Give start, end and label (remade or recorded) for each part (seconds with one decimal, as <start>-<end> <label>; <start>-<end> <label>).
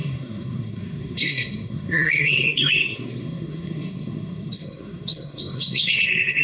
0.0-6.4 remade